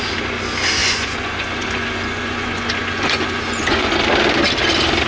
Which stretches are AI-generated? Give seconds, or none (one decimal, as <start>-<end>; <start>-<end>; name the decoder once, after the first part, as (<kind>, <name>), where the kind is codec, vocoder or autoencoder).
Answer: 0.8-3.9 (vocoder, Vocos)